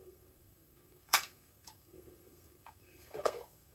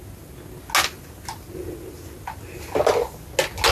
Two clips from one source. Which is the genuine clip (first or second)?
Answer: second